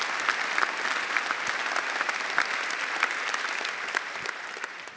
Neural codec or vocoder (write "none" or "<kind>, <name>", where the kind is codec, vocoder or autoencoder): none